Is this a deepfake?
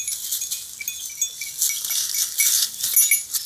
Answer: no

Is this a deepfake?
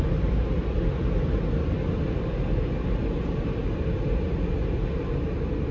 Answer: no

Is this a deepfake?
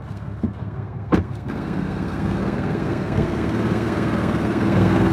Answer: yes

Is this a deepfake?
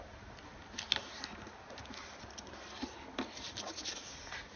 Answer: no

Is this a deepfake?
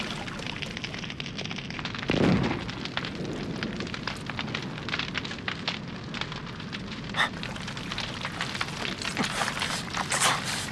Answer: no